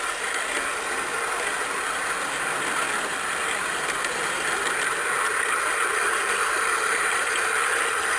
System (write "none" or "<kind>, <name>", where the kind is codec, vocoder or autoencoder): none